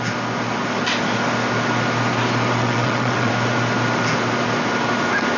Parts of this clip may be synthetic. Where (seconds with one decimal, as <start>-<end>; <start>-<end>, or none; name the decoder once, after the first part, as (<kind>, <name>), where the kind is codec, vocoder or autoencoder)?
2.6-3.3 (vocoder, WaveNeXt)